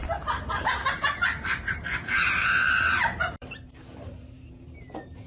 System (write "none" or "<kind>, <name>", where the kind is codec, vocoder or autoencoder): vocoder, BigVGAN v2